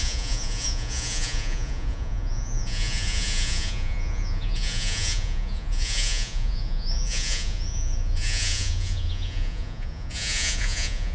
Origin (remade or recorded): remade